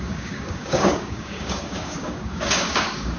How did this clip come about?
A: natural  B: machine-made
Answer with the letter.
B